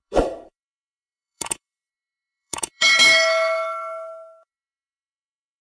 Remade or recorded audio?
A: remade